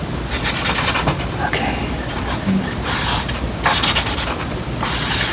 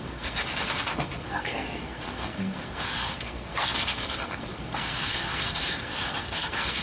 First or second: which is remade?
second